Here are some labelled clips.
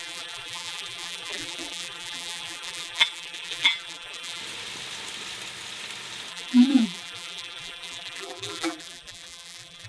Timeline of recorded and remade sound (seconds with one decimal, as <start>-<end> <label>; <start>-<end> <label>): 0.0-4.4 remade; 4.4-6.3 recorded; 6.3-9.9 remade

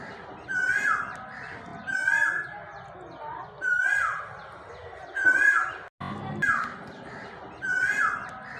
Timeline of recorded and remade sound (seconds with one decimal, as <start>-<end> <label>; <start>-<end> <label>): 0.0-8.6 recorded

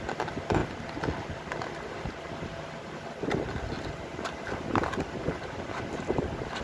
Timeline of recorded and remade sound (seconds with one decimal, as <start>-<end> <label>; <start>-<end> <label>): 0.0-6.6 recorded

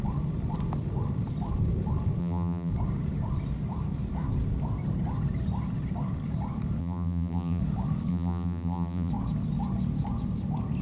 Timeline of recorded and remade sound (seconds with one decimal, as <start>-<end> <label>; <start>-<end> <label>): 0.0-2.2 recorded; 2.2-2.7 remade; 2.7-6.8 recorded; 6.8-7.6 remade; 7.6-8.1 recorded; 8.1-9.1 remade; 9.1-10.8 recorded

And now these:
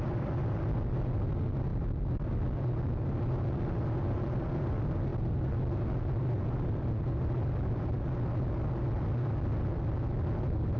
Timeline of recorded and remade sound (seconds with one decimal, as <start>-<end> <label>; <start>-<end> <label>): 0.0-10.8 recorded

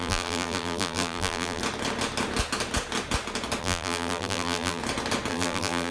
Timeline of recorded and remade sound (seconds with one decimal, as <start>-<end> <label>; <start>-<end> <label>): 0.0-1.6 remade; 1.6-3.6 recorded; 3.6-4.8 remade; 4.8-5.3 recorded; 5.3-5.9 remade

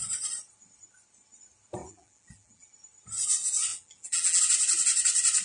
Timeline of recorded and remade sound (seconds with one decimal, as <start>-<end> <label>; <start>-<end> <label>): 0.0-1.8 recorded; 1.8-2.7 remade; 2.7-3.7 recorded; 3.7-4.4 remade; 4.4-5.4 recorded